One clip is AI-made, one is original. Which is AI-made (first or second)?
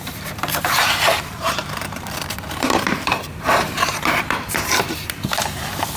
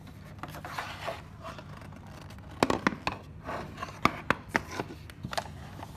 first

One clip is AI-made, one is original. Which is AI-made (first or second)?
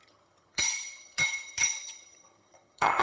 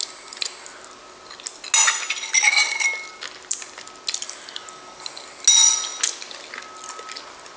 first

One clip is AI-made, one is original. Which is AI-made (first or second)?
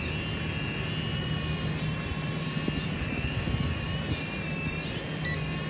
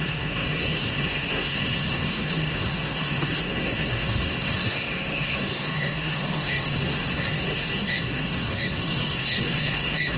second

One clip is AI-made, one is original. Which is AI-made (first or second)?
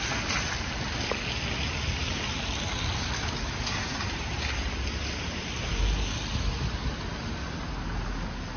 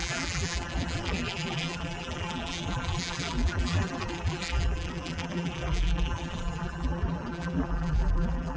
second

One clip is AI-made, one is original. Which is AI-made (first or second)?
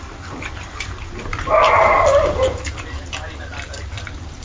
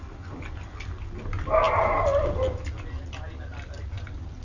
first